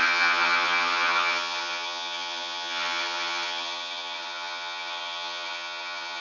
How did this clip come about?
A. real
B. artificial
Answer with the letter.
B